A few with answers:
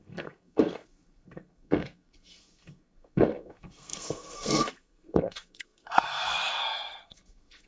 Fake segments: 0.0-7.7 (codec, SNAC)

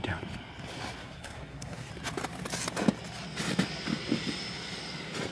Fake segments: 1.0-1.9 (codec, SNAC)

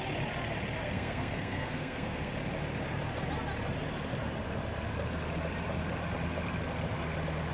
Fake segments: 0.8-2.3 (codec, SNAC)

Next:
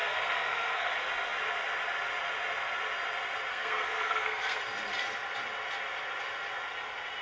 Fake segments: 0.0-0.9 (codec, SNAC); 3.5-4.6